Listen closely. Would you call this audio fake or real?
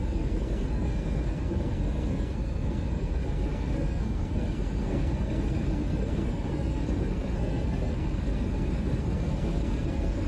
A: fake